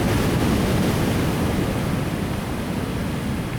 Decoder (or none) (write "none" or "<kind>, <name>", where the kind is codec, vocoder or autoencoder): none